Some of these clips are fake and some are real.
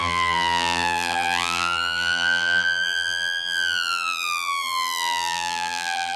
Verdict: fake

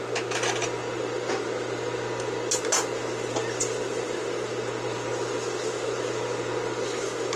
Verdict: real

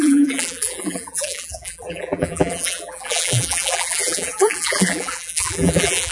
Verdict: fake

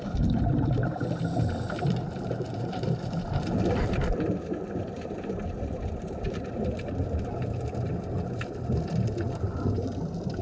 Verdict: fake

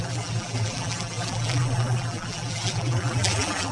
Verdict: fake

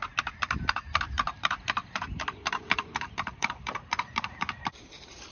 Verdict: fake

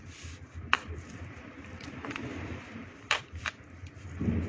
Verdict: fake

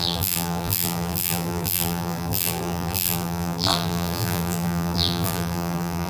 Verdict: fake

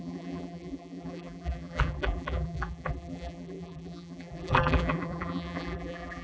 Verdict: fake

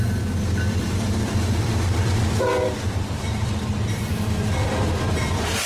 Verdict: fake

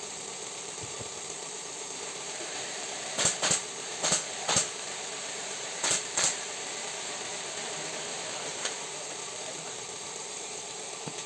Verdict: fake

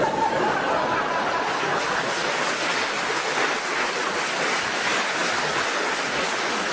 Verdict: real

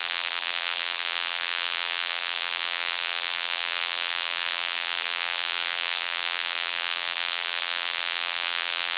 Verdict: fake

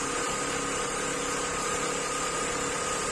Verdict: real